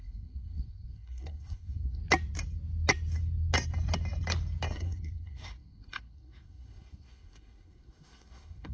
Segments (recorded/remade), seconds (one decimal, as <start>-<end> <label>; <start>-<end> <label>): 0.0-2.0 remade; 2.0-4.7 recorded; 4.7-8.7 remade